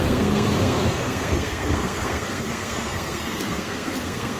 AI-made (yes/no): yes